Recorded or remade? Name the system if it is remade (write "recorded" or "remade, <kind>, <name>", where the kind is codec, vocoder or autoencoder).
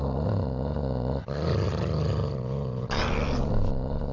recorded